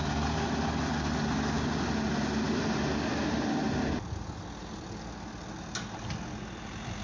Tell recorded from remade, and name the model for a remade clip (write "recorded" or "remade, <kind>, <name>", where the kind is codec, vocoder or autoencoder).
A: recorded